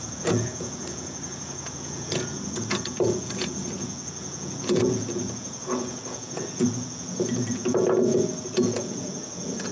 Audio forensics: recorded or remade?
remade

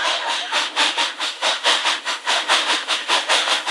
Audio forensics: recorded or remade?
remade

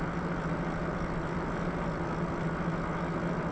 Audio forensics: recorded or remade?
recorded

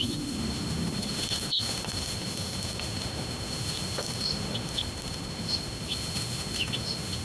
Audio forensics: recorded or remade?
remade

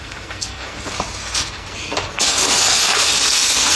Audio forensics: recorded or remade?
remade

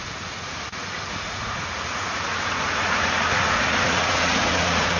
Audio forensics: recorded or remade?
remade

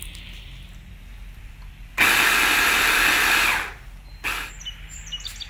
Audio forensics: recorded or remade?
recorded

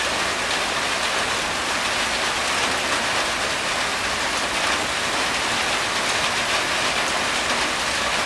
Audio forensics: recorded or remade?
recorded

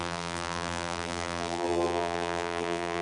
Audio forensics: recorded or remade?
remade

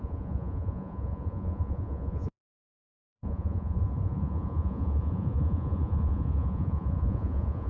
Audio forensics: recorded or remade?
remade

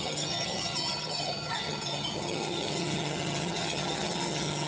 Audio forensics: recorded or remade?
remade